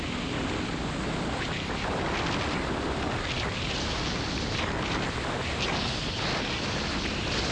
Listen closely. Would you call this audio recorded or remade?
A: recorded